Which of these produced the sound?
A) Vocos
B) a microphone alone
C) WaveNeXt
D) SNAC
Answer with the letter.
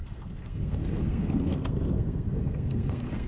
D